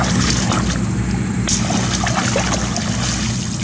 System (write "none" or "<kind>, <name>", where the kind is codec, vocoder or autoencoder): none